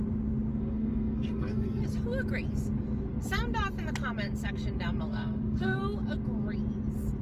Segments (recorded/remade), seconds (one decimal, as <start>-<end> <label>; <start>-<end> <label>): 0.0-0.5 recorded; 0.5-1.8 remade; 1.8-5.1 recorded; 5.1-5.8 remade; 5.8-7.2 recorded